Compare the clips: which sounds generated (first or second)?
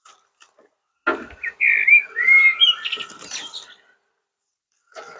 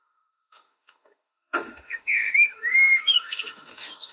second